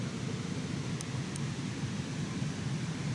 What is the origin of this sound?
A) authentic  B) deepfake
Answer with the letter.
B